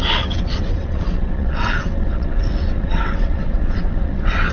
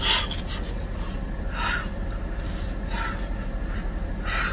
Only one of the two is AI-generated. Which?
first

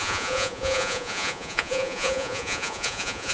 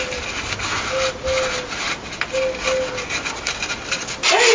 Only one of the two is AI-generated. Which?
first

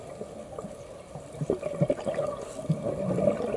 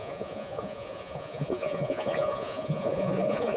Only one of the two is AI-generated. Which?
second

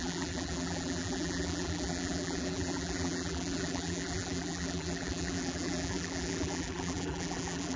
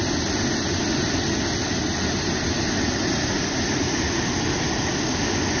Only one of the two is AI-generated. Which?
first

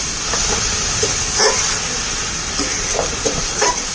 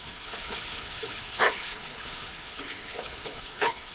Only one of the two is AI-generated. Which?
second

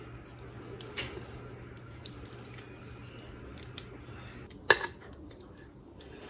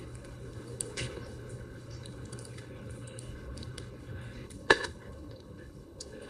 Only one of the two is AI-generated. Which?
second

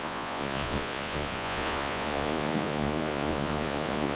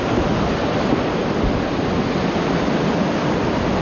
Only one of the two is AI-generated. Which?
first